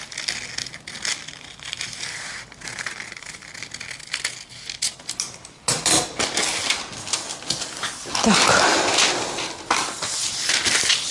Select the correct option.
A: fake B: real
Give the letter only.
B